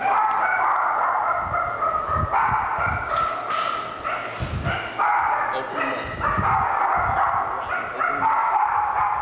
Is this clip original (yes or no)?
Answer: yes